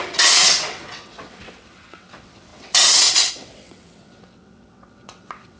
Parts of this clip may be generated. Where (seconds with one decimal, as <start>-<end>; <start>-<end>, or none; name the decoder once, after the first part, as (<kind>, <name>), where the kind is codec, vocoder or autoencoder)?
0.0-5.6 (vocoder, WaveNeXt)